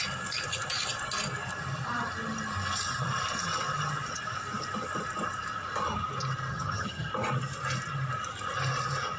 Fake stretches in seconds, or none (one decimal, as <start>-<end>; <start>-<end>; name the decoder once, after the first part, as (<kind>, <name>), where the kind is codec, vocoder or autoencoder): 6.5-7.1 (vocoder, HiFi-GAN)